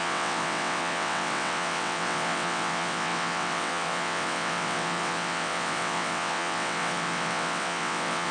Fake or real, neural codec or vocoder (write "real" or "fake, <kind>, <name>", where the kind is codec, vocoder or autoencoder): fake, vocoder, WaveNeXt